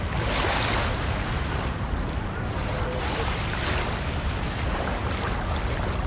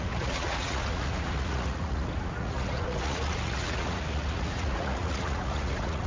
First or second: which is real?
first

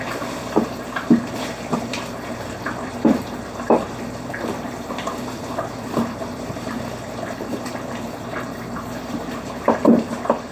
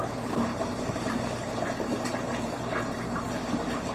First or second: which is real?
second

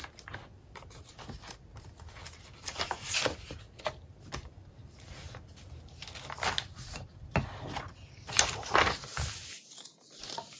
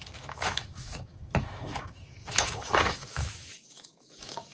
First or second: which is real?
first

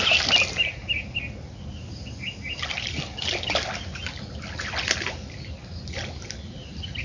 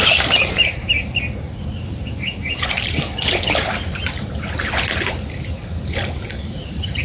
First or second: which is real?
first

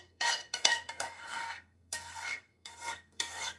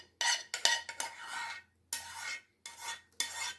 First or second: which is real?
second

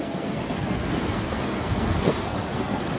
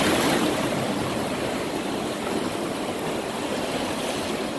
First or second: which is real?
second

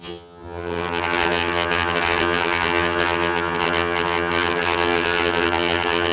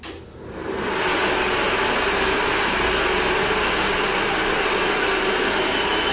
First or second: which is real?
second